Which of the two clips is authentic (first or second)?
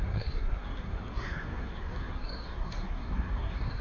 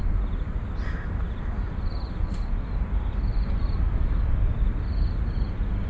second